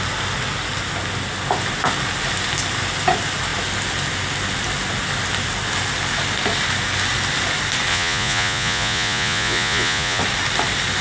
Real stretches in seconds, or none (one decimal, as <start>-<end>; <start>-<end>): 0.0-7.9; 10.2-11.0